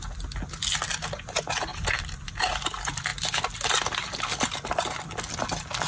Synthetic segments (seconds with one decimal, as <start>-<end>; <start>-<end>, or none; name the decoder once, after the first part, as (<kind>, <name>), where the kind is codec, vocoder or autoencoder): 1.7-2.3 (vocoder, BigVGAN v2)